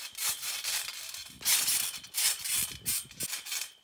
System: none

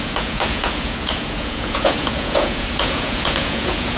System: vocoder, Vocos